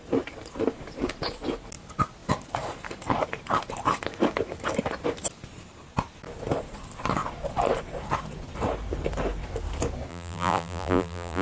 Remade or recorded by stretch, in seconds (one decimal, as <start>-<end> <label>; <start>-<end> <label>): 0.0-10.1 recorded; 10.1-11.4 remade